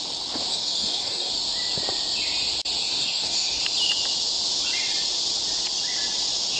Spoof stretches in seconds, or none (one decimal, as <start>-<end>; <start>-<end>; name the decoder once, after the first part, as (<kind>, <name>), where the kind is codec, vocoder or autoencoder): 0.5-1.3 (codec, DAC); 2.8-3.6